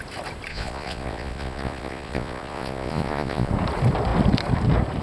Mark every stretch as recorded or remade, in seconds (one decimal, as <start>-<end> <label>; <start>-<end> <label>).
0.0-0.5 recorded; 0.5-3.5 remade; 3.5-5.0 recorded